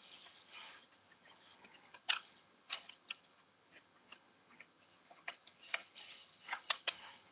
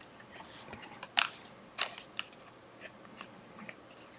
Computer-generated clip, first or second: first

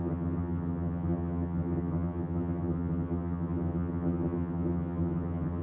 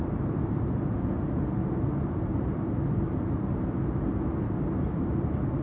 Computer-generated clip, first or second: first